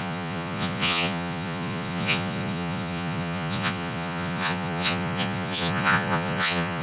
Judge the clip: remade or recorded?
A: remade